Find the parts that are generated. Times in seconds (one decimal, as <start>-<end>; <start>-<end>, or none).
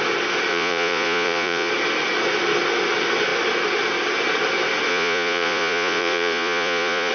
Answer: 0.5-1.7; 4.9-7.1